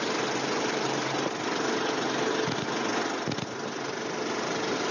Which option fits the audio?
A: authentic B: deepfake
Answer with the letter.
A